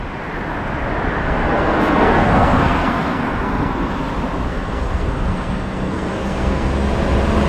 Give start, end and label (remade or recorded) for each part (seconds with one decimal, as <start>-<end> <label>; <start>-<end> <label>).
0.0-1.2 recorded; 1.2-4.1 remade; 4.1-4.5 recorded; 4.5-6.7 remade; 6.7-7.5 recorded